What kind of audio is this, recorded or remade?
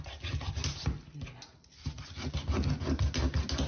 recorded